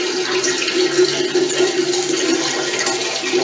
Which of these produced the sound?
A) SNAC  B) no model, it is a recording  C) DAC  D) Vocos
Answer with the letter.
B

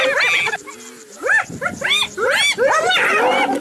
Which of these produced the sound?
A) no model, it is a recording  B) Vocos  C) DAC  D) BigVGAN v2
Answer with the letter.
A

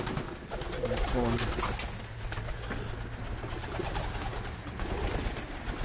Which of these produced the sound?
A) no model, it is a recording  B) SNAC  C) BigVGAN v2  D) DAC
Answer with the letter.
A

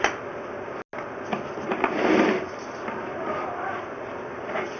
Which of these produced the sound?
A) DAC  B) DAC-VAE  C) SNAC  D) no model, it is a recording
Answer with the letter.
D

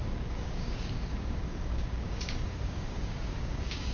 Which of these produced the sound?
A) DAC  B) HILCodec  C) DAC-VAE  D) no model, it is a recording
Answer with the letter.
A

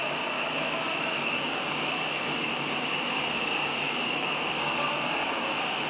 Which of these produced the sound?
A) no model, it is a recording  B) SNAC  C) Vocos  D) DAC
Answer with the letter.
D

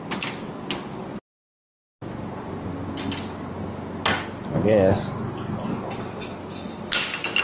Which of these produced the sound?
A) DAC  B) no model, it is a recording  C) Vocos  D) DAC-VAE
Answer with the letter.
B